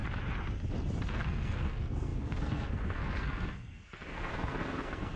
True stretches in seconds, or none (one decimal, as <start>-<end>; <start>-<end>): 0.0-1.1